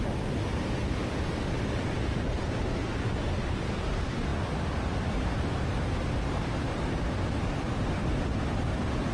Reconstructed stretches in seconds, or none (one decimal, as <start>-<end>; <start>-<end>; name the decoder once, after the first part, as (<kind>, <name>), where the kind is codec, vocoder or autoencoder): none

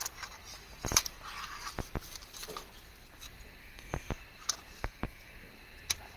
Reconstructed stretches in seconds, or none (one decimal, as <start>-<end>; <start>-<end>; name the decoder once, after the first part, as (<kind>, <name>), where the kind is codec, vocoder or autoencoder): 3.6-4.1 (codec, SNAC); 4.8-5.5

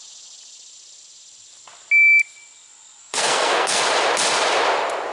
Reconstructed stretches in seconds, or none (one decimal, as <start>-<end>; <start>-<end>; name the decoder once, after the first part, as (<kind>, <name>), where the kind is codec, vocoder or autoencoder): 3.0-3.8 (codec, SNAC)

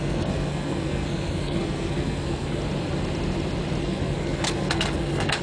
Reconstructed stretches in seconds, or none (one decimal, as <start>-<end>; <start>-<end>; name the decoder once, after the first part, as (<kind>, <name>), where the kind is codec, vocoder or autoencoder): 0.0-2.6 (codec, SNAC); 3.8-5.4

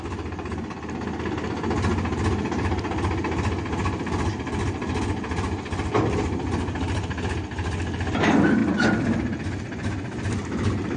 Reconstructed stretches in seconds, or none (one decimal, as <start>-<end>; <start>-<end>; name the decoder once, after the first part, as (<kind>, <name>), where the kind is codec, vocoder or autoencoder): none

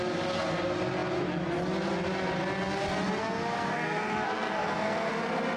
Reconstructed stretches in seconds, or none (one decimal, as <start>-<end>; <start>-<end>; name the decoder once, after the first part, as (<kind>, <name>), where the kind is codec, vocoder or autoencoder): 3.2-5.1 (codec, SNAC)

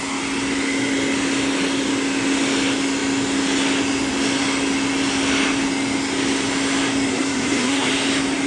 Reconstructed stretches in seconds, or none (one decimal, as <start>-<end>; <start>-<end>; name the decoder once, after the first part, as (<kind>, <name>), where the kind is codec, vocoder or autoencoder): 7.1-7.9 (codec, SNAC)